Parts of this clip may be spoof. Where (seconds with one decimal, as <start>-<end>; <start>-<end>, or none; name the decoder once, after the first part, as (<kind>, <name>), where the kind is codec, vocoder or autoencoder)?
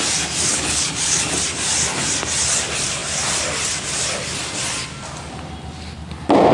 0.5-1.3 (codec, HILCodec)